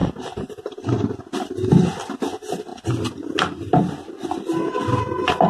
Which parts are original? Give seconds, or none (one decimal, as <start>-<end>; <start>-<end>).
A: 1.5-2.7; 5.0-5.5